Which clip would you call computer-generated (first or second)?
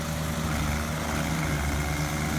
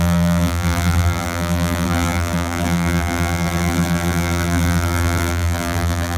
second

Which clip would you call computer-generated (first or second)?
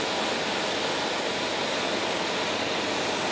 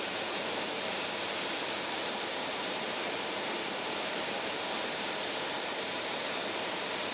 second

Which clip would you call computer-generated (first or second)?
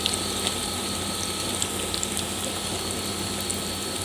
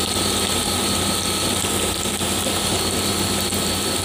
second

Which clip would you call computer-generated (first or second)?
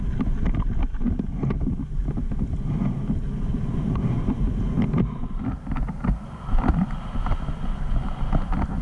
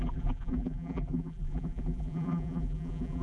second